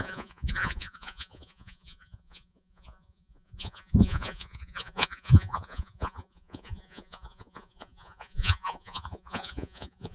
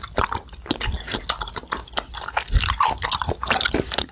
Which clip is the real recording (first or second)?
second